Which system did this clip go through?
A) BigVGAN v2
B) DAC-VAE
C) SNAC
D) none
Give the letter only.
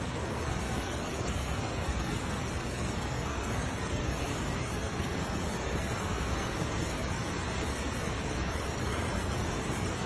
C